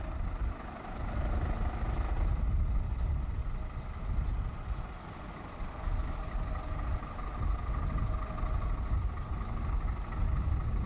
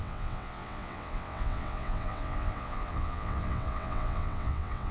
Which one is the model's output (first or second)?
second